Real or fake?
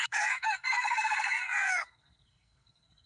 fake